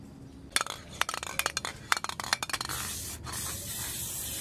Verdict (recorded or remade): recorded